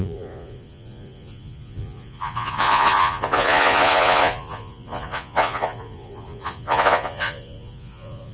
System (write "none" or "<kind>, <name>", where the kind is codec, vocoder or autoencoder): vocoder, Vocos